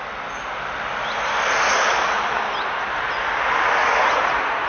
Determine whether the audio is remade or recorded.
recorded